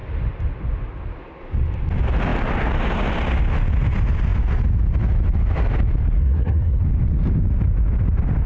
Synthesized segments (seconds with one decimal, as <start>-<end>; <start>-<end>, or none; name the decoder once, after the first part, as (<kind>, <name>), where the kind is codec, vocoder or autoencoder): 6.2-6.8 (codec, SNAC)